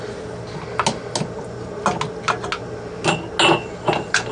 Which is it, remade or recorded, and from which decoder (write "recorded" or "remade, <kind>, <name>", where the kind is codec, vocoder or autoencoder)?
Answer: recorded